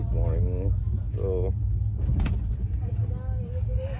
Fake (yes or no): no